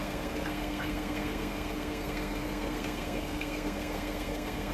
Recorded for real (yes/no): no